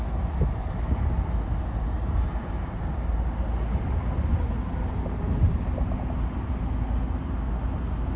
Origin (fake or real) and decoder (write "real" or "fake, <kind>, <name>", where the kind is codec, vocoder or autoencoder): real